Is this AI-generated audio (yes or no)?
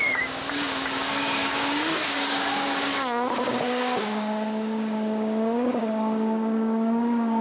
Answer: yes